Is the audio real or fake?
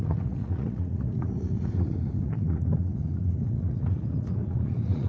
fake